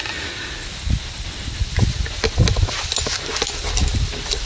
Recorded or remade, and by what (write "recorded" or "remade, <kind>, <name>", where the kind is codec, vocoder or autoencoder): recorded